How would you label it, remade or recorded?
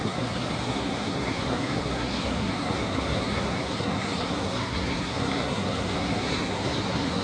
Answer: remade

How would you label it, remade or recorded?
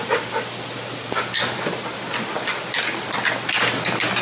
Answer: recorded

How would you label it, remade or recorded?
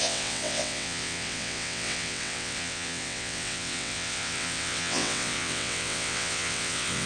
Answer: remade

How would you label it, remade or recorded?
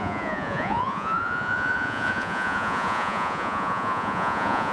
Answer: remade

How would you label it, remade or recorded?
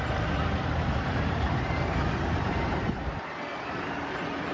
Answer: remade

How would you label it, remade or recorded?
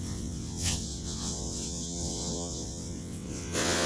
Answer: remade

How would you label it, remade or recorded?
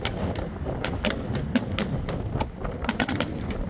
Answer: recorded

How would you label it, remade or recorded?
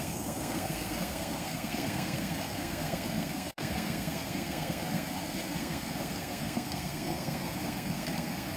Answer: remade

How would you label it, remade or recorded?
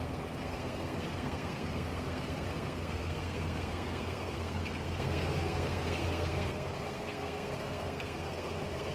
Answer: remade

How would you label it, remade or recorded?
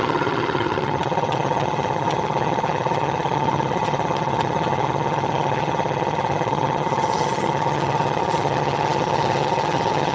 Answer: remade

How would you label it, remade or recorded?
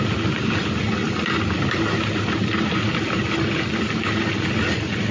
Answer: recorded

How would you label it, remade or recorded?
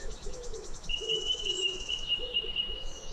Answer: remade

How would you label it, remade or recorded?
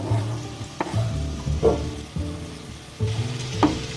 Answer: remade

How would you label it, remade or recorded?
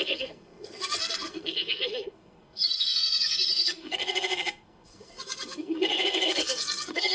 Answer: remade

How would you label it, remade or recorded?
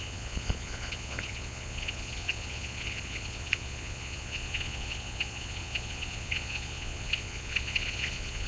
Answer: remade